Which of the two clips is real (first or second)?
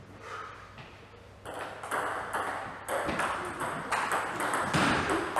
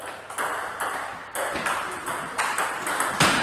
first